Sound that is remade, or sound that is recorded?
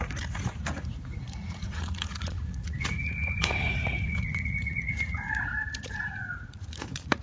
remade